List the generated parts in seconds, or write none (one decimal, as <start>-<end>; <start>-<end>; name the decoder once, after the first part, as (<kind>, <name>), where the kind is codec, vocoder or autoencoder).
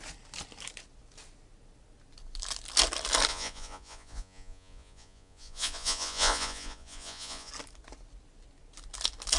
3.3-7.5 (vocoder, Vocos)